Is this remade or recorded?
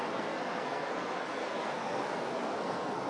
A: remade